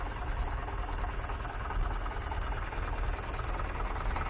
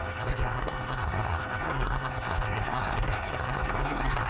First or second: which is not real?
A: second